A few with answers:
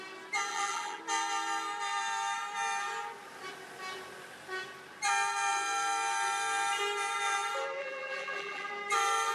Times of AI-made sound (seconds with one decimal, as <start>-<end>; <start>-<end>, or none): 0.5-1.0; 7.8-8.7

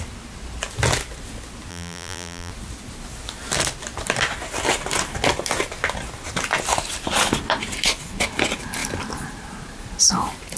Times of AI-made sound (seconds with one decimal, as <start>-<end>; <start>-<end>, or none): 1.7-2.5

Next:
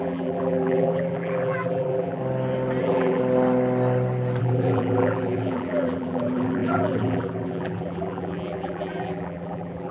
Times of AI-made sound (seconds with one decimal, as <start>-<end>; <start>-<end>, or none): 0.0-2.2; 2.8-3.2; 4.4-9.9